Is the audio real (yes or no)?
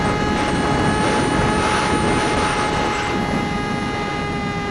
yes